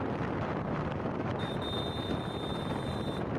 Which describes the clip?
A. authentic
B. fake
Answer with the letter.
B